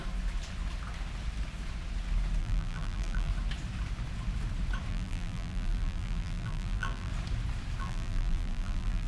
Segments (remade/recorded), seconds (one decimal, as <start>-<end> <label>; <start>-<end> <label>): 0.0-2.4 recorded; 2.4-3.3 remade; 3.3-4.9 recorded; 4.9-7.1 remade; 7.1-7.8 recorded; 7.8-9.1 remade